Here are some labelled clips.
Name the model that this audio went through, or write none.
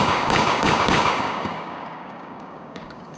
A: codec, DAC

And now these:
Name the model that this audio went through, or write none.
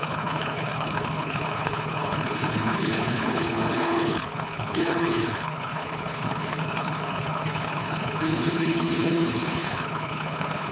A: codec, HILCodec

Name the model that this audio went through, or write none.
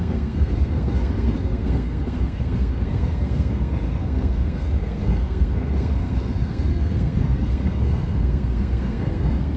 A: codec, SNAC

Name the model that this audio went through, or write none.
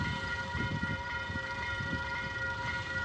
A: vocoder, BigVGAN v2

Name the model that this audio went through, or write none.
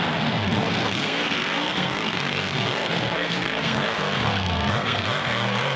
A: codec, SNAC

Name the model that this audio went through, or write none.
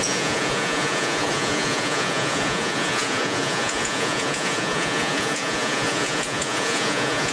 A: vocoder, Vocos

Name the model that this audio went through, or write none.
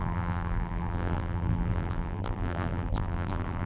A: vocoder, BigVGAN v2